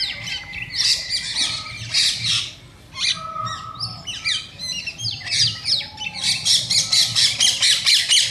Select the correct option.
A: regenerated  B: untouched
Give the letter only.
B